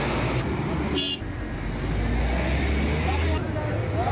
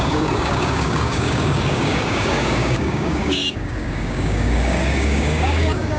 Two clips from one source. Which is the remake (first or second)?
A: second